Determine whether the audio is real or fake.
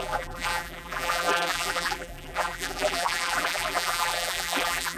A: fake